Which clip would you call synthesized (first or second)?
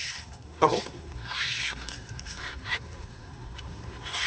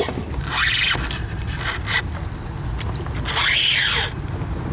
first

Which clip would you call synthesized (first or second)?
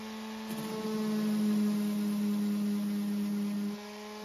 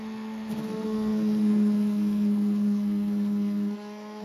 second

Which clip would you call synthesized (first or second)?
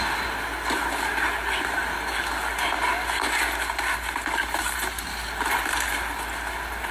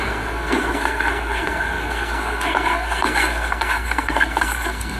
second